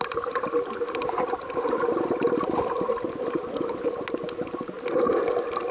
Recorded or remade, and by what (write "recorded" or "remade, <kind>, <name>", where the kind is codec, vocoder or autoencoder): recorded